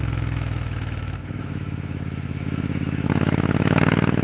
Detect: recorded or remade remade